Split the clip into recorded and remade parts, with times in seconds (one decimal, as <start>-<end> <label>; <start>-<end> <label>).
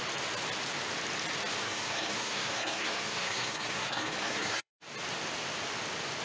0.0-1.6 recorded; 1.6-4.7 remade; 4.7-6.2 recorded